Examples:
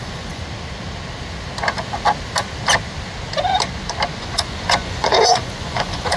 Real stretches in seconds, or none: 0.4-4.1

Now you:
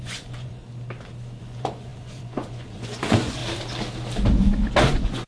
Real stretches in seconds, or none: 0.6-1.4; 3.4-4.8

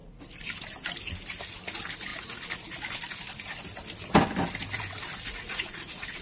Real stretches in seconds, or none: 0.0-5.3

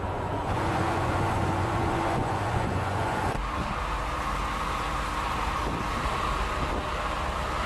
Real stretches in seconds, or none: 3.4-7.7

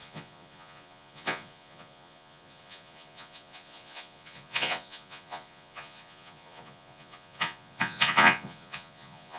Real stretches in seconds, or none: none